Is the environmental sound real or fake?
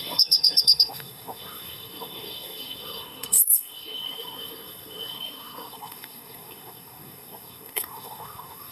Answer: fake